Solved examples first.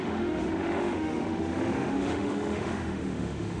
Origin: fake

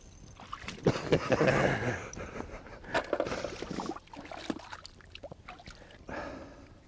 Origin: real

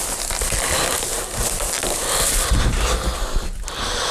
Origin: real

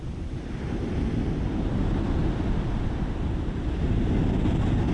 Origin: real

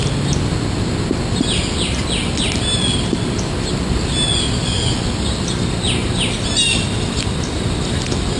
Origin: real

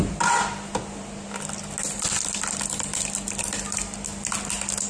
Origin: real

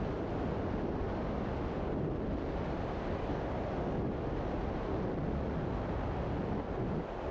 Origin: real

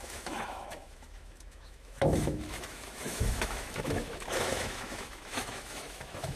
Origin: fake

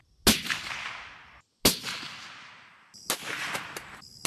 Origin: real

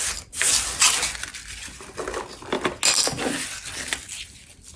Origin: real